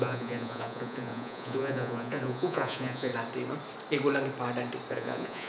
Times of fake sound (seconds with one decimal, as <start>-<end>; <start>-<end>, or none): 0.0-3.1; 4.9-5.5